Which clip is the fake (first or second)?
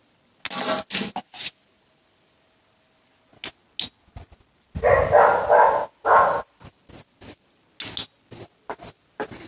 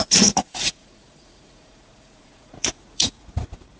second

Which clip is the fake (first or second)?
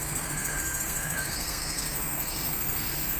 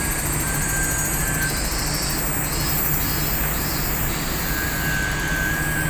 first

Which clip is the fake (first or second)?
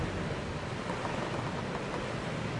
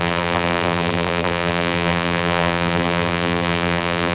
second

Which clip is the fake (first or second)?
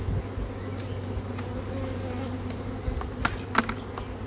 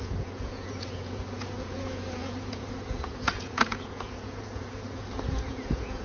second